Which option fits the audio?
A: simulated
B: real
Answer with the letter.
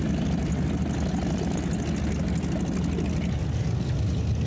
B